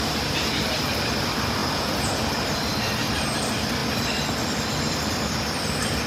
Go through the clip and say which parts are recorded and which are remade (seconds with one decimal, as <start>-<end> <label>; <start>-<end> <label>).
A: 0.0-1.6 recorded; 1.6-2.3 remade; 2.3-6.1 recorded